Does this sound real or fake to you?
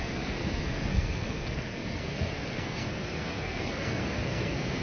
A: fake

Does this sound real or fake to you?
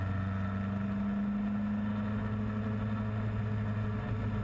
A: real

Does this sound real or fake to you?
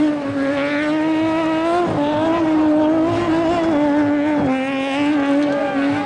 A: real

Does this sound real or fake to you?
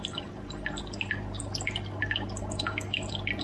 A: real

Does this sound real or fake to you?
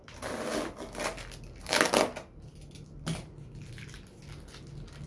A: real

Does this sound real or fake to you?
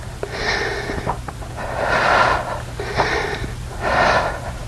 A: real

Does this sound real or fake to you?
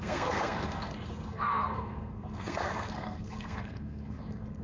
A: fake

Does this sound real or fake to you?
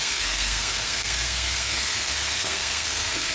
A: fake